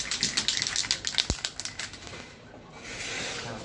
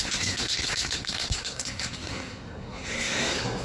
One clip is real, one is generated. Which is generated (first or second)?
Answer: second